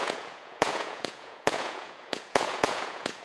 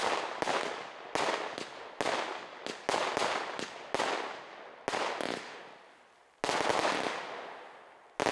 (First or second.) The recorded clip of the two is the second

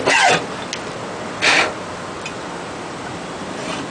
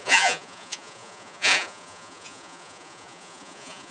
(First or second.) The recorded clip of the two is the first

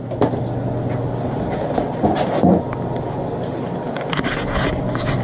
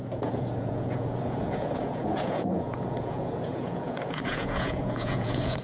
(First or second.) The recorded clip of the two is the first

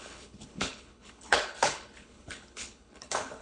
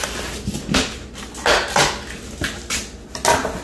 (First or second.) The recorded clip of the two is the second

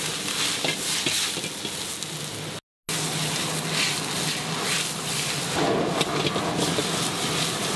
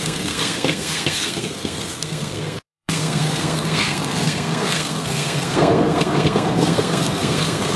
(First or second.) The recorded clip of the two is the first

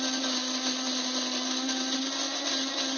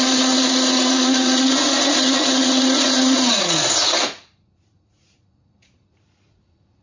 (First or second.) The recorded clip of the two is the first